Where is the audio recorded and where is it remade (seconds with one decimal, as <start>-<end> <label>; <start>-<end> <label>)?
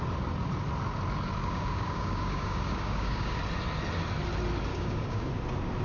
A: 0.0-1.4 recorded; 1.4-3.4 remade; 3.4-4.7 recorded; 4.7-5.3 remade; 5.3-5.8 recorded